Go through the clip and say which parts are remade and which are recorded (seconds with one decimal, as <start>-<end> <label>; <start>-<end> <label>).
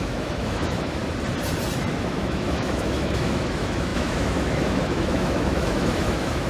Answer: 0.0-1.0 remade; 1.0-2.0 recorded; 2.0-6.5 remade